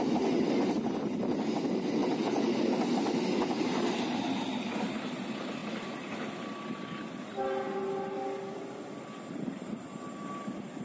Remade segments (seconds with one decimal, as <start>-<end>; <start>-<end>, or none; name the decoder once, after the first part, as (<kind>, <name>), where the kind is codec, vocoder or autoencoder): none